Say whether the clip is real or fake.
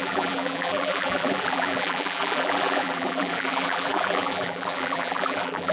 fake